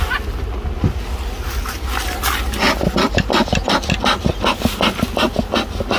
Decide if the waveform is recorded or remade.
recorded